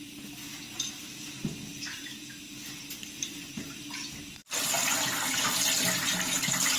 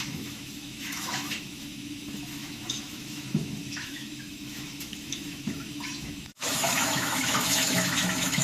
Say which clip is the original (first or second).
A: first